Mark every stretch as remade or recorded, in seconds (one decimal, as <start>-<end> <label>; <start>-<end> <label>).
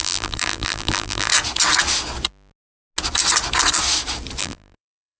0.0-1.3 remade; 1.3-4.4 recorded; 4.4-5.2 remade